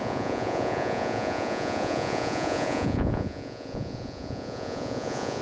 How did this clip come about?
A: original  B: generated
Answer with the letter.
B